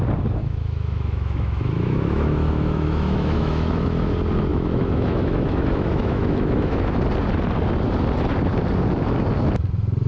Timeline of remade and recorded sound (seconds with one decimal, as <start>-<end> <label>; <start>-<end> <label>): 0.0-0.4 recorded; 0.4-4.1 remade; 4.1-4.5 recorded; 4.5-7.0 remade; 7.0-10.1 recorded